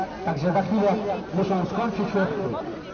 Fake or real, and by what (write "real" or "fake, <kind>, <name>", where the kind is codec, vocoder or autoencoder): real